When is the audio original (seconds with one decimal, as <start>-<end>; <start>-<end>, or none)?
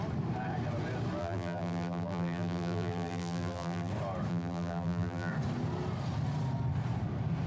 0.0-1.2; 3.9-4.3; 5.3-7.5